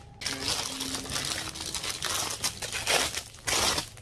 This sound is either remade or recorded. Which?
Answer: recorded